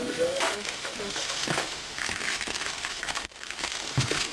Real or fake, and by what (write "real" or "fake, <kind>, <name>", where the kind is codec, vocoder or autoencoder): fake, autoencoder, DAC-VAE